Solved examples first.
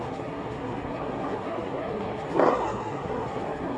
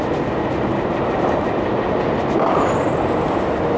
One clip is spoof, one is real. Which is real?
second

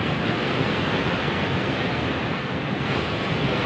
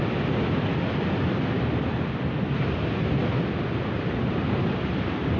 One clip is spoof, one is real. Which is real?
second